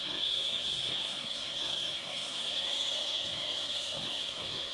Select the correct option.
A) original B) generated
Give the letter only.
B